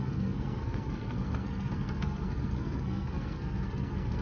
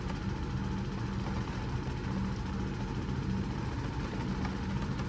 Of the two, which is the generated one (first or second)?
first